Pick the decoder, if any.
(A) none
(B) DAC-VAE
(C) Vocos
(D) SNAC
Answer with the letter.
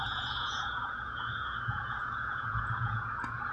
C